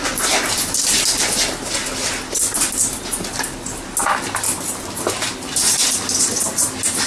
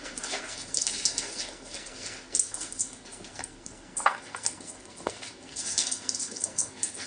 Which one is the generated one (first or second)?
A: second